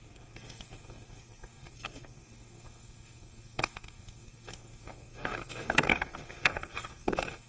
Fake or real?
fake